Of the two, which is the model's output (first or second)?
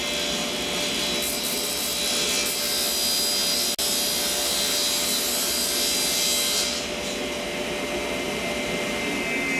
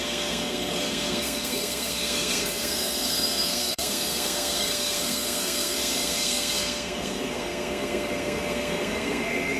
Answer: second